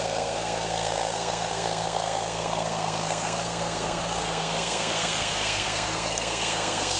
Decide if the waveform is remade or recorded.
remade